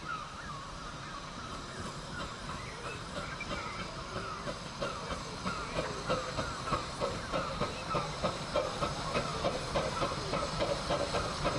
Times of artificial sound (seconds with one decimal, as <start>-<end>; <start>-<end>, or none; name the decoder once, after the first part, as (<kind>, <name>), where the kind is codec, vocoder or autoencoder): 0.0-11.6 (vocoder, BigVGAN v2)